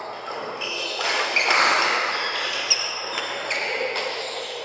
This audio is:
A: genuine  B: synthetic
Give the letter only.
A